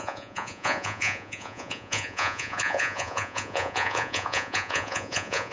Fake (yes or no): yes